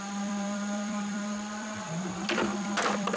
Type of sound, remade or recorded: remade